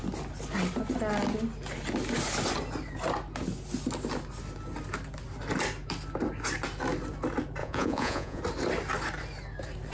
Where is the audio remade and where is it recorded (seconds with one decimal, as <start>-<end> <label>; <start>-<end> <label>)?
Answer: 0.0-7.6 recorded; 7.6-8.4 remade; 8.4-9.9 recorded